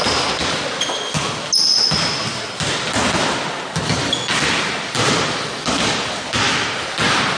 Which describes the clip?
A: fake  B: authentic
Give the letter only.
B